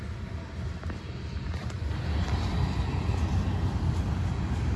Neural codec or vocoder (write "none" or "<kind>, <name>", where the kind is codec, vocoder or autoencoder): none